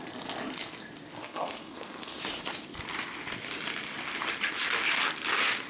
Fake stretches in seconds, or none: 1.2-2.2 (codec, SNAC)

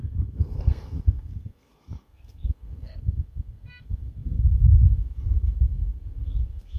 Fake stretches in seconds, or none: 0.0-6.8 (codec, SNAC)